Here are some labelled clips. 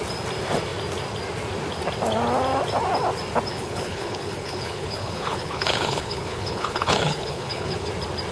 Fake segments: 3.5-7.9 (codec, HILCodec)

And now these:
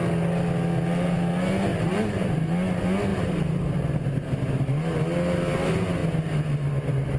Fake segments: 1.7-2.4 (vocoder, BigVGAN v2); 3.1-5.0